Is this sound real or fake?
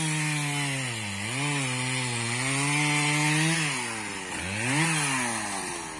real